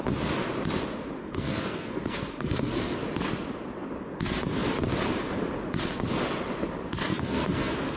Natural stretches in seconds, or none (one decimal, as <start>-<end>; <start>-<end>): 0.0-1.2; 3.0-7.1